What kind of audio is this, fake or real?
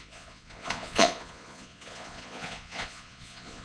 fake